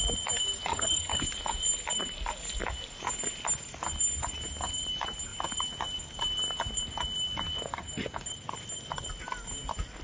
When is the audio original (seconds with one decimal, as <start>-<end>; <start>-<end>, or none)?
0.0-0.7; 1.2-10.0